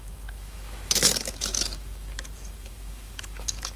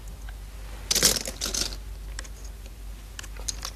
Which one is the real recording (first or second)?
second